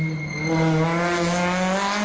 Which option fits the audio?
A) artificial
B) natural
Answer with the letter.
B